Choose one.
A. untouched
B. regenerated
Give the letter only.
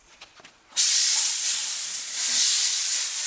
B